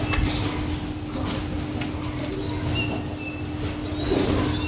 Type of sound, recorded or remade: recorded